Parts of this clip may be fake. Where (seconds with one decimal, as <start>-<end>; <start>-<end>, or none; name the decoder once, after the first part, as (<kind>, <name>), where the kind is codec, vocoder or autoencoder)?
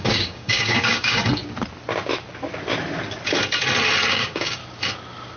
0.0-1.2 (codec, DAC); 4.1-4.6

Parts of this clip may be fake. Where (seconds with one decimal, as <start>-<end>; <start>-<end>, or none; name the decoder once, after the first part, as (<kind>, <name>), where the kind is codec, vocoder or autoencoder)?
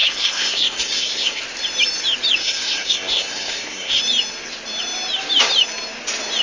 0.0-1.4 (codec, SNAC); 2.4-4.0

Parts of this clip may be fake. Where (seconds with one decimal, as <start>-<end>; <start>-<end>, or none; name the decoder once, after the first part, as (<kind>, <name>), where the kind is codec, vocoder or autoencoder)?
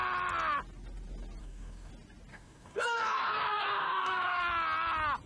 1.4-1.9 (codec, DAC); 2.3-4.4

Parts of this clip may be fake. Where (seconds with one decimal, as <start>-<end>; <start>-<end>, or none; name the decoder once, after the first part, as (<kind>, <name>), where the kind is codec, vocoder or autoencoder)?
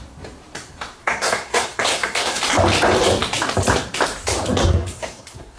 1.0-2.4 (codec, SNAC); 4.6-5.6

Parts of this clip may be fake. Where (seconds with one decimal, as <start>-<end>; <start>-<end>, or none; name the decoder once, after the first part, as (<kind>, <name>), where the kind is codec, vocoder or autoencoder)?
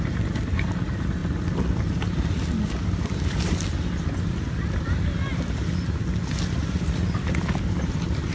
none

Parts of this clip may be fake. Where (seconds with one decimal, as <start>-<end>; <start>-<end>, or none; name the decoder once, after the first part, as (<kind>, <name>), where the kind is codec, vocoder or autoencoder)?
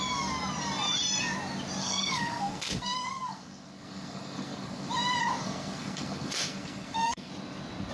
1.8-4.9 (codec, SNAC); 5.4-7.3